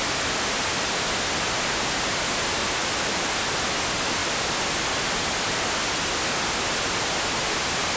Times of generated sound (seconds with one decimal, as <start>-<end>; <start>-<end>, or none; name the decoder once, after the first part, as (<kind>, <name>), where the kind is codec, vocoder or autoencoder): 2.8-3.3 (vocoder, BigVGAN v2)